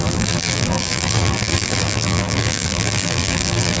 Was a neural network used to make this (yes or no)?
yes